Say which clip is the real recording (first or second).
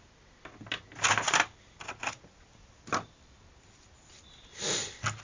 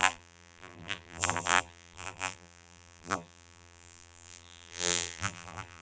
first